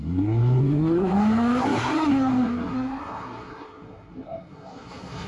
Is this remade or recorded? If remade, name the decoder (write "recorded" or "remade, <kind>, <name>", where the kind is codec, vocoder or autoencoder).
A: remade, codec, SNAC